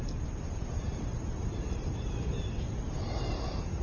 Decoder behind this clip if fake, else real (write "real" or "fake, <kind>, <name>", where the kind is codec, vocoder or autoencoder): fake, vocoder, BigVGAN v2